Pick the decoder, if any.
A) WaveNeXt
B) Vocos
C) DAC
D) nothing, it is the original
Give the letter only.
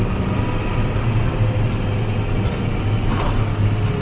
D